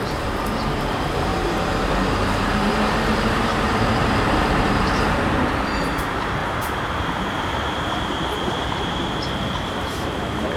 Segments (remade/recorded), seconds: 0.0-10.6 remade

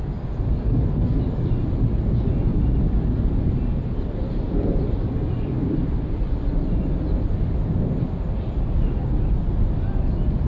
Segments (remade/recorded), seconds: 0.0-2.5 recorded; 2.5-6.5 remade; 6.5-10.5 recorded

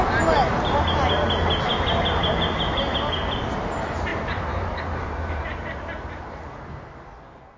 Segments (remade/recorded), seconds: 0.0-4.1 recorded; 4.1-6.3 remade; 6.3-7.6 recorded

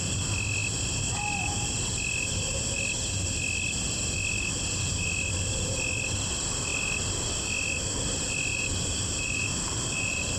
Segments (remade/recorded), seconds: 0.0-4.5 recorded; 4.5-5.3 remade; 5.3-8.5 recorded; 8.5-10.4 remade

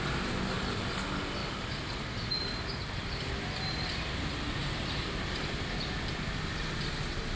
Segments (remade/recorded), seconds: 0.0-1.4 recorded; 1.4-3.3 remade; 3.3-4.6 recorded; 4.6-5.4 remade; 5.4-7.4 recorded

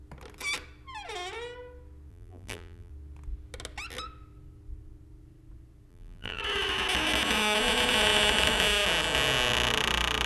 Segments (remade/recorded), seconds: 0.0-2.1 recorded; 2.1-2.9 remade; 2.9-5.9 recorded; 5.9-6.4 remade; 6.4-10.3 recorded